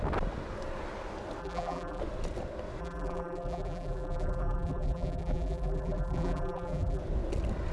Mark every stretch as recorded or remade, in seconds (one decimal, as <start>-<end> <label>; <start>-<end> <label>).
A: 0.0-1.4 recorded; 1.4-2.0 remade; 2.0-2.8 recorded; 2.8-7.0 remade; 7.0-7.7 recorded